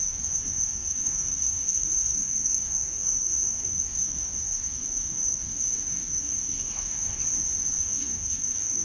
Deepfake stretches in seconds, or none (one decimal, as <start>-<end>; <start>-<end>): 0.0-7.2; 7.8-8.8